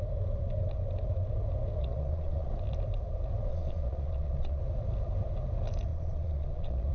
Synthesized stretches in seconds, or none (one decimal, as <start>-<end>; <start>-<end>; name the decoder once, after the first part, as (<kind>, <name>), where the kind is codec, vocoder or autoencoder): 1.8-2.5 (vocoder, Vocos); 3.5-4.6; 5.9-6.9